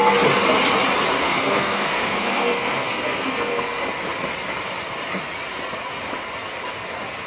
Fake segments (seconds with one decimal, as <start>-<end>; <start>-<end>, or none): 1.2-3.8

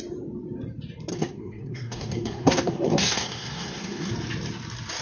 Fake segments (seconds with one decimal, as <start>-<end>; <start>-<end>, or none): 1.1-4.1